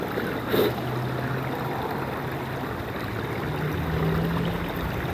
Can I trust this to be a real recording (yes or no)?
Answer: yes